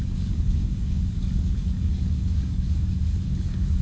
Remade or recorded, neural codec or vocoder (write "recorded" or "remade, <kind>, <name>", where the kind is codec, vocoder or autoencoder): remade, codec, DAC